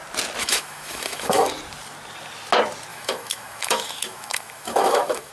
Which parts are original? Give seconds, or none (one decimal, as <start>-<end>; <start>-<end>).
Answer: 0.0-0.4; 1.5-2.9